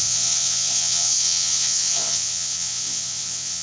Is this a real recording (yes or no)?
no